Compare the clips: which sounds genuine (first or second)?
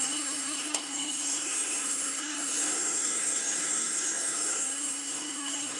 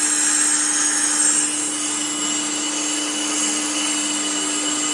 second